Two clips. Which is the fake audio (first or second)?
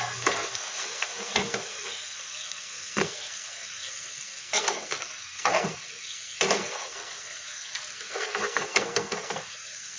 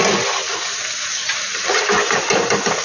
first